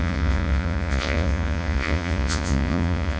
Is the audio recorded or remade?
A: remade